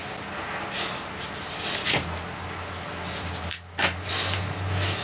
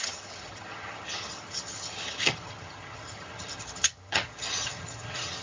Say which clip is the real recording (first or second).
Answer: first